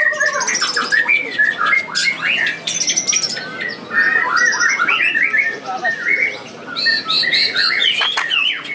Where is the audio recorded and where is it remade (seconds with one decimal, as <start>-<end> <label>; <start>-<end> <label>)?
0.0-7.3 recorded; 7.3-8.7 remade